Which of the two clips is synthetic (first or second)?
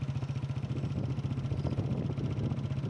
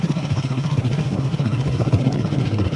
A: second